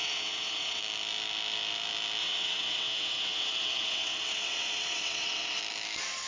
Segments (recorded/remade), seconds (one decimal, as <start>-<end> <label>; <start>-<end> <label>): 0.0-0.8 remade; 0.8-2.2 recorded; 2.2-5.6 remade; 5.6-6.3 recorded